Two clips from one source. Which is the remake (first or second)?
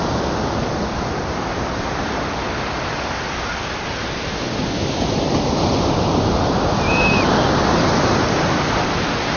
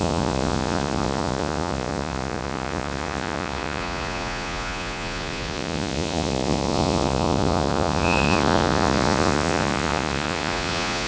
second